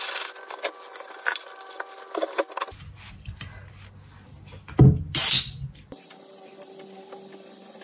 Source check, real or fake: real